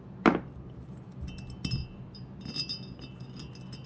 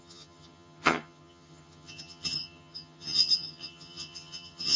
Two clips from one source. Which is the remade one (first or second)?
second